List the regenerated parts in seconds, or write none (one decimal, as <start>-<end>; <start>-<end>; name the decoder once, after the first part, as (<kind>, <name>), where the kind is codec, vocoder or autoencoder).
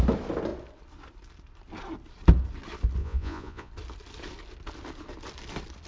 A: 3.0-3.7 (vocoder, Vocos)